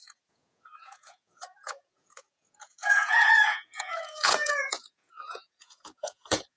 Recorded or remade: remade